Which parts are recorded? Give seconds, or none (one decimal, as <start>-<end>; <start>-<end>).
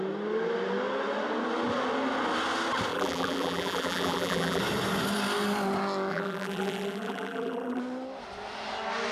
0.0-2.9; 4.6-6.1; 7.8-9.1